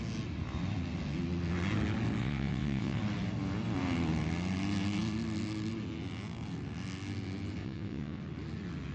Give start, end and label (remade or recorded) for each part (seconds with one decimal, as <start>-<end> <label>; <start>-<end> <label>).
0.0-2.2 recorded; 2.2-3.0 remade; 3.0-7.6 recorded; 7.6-8.2 remade; 8.2-8.9 recorded